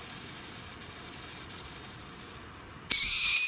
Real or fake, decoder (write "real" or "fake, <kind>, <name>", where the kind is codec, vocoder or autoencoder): real